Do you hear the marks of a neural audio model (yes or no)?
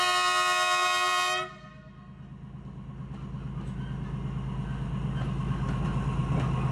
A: no